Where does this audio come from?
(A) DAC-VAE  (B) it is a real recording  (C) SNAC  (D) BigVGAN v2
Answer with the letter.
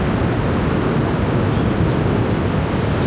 B